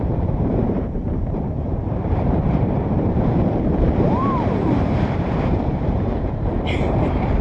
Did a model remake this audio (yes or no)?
yes